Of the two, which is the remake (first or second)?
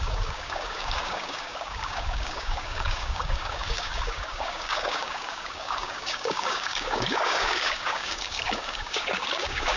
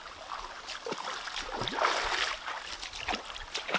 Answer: first